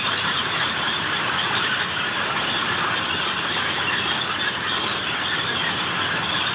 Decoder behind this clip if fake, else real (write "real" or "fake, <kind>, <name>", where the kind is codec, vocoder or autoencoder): real